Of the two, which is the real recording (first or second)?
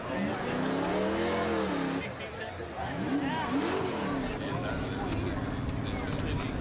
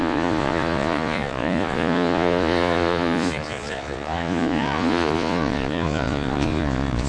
first